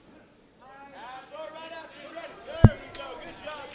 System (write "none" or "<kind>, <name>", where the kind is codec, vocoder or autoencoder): none